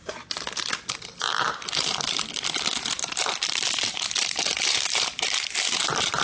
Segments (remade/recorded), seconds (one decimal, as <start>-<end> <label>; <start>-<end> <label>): 0.0-3.7 recorded; 3.7-6.2 remade